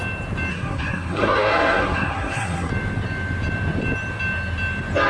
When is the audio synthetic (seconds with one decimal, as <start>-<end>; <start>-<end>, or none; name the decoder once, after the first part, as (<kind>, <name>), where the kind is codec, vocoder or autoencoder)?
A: 0.5-2.7 (codec, SNAC)